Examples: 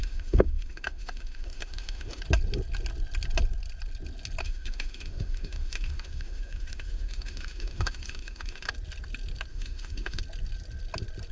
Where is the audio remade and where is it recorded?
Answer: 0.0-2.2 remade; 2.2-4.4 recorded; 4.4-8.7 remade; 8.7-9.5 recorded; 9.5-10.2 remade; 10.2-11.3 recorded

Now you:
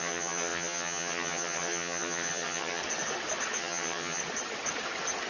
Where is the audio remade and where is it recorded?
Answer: 0.0-2.8 remade; 2.8-3.6 recorded; 3.6-4.2 remade; 4.2-5.3 recorded